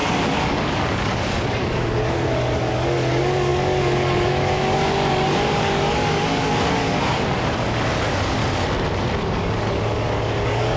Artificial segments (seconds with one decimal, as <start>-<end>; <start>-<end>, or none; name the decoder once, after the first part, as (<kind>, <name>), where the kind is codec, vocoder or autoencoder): 0.0-8.4 (codec, DAC); 9.2-10.8